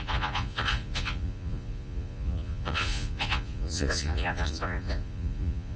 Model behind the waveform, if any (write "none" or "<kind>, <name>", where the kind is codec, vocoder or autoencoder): vocoder, Vocos